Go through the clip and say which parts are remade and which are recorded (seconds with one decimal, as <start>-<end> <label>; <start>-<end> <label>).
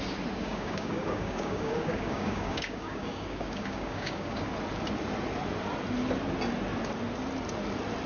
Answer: 0.0-0.4 recorded; 0.4-4.5 remade; 4.5-8.1 recorded